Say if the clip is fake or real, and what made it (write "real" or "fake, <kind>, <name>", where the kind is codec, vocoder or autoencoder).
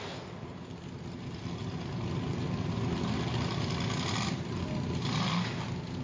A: real